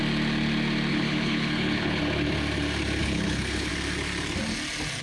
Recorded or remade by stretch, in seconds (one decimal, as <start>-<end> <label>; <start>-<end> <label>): 0.0-0.9 recorded; 0.9-2.0 remade; 2.0-3.0 recorded; 3.0-3.7 remade; 3.7-5.0 recorded